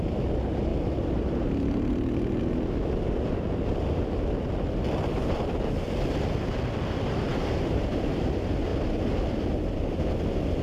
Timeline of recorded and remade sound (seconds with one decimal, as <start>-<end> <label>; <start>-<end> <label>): 0.0-0.7 recorded; 0.7-2.4 remade; 2.4-7.3 recorded; 7.3-7.9 remade; 7.9-10.6 recorded